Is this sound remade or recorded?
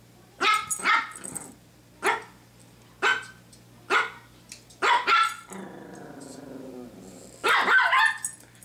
recorded